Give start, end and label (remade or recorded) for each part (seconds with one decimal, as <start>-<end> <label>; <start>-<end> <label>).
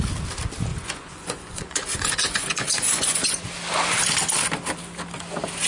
0.0-0.7 recorded; 0.7-3.4 remade; 3.4-5.7 recorded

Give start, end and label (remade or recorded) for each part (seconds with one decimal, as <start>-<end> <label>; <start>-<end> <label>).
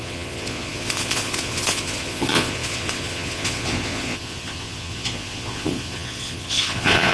0.0-7.1 remade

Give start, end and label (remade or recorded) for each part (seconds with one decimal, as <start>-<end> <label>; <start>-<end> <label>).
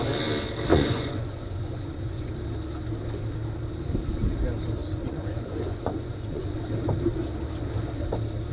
0.0-0.7 recorded; 0.7-2.3 remade; 2.3-4.8 recorded; 4.8-6.5 remade; 6.5-8.5 recorded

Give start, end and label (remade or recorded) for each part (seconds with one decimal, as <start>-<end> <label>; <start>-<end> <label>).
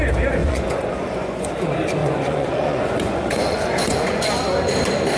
0.0-0.4 recorded; 0.4-1.5 remade; 1.5-2.0 recorded; 2.0-4.2 remade; 4.2-5.2 recorded